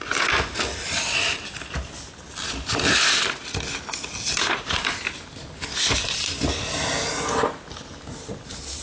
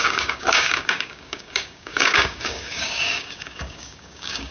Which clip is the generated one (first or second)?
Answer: second